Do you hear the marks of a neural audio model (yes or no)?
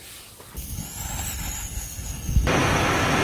no